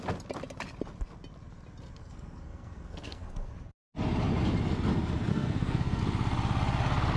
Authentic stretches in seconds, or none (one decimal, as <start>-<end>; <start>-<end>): 0.0-2.0; 3.5-5.3; 6.0-7.2